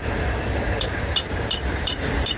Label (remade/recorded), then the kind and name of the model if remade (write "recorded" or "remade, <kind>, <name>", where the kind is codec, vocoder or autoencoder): recorded